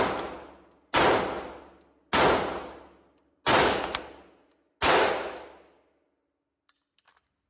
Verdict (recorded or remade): recorded